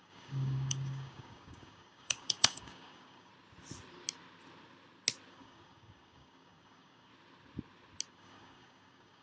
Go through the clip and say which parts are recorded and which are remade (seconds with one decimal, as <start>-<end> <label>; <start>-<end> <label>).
0.0-3.3 remade; 3.3-5.3 recorded; 5.3-7.1 remade; 7.1-8.1 recorded; 8.1-9.2 remade